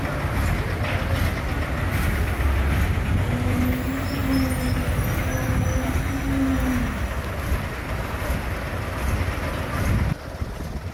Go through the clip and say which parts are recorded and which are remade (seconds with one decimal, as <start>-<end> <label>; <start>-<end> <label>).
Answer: 0.0-10.9 recorded